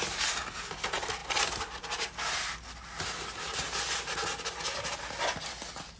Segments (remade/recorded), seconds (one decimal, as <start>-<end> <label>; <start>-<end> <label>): 0.0-6.0 recorded